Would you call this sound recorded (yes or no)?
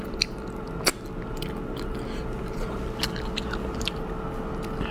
yes